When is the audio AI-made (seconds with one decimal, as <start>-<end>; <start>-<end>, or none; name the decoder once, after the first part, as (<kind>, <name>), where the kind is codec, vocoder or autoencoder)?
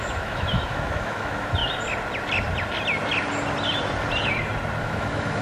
0.0-1.6 (autoencoder, DAC-VAE); 4.8-5.4